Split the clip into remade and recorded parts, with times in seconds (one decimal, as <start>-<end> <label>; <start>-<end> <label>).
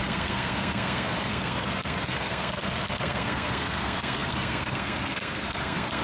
0.0-6.0 remade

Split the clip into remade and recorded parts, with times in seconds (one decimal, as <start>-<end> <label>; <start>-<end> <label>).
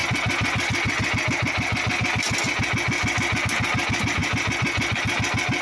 0.0-5.6 recorded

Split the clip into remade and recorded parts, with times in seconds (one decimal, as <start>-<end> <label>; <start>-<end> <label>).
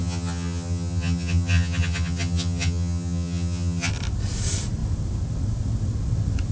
0.0-3.9 remade; 3.9-6.5 recorded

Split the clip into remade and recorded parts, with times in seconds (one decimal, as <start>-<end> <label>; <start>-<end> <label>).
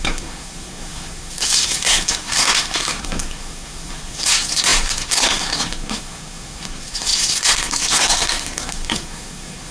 0.0-9.7 remade